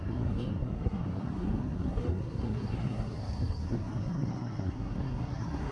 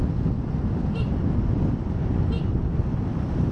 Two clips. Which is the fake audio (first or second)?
first